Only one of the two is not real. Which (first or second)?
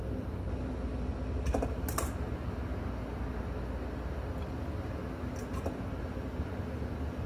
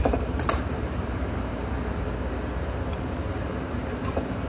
second